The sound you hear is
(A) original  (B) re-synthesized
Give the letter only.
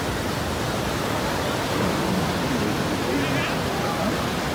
A